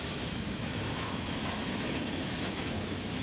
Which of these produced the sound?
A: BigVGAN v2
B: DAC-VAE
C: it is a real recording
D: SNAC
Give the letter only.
B